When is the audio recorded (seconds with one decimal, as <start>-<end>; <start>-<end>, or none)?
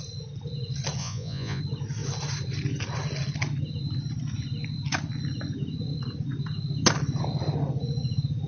0.0-1.0; 1.6-8.5